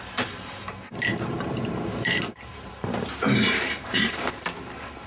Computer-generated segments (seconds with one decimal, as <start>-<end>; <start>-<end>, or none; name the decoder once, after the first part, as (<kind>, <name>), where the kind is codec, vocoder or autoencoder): 1.1-4.2 (vocoder, BigVGAN v2)